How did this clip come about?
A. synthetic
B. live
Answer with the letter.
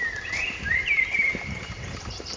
A